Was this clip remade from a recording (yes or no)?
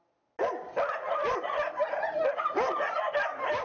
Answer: no